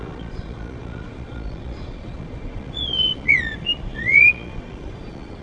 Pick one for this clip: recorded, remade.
remade